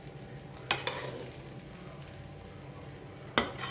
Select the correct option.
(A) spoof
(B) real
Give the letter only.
B